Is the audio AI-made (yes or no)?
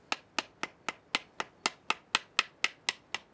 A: no